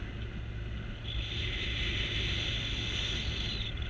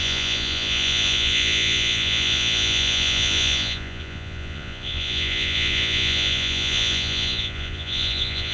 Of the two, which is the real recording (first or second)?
first